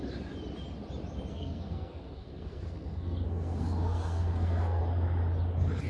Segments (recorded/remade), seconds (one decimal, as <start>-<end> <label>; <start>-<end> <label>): 0.0-1.3 recorded; 1.3-4.8 remade; 4.8-5.9 recorded